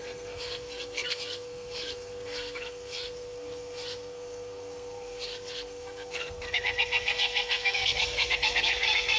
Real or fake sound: fake